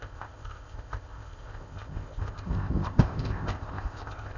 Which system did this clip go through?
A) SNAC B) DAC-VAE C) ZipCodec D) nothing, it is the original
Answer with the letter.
C